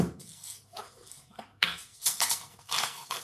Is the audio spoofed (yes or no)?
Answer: yes